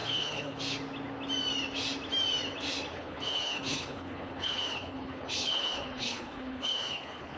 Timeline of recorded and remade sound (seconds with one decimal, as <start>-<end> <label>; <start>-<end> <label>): 0.0-0.6 remade; 0.6-2.9 recorded; 2.9-7.4 remade

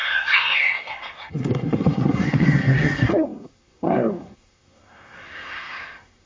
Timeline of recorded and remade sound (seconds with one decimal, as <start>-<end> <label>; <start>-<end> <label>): 0.0-6.3 remade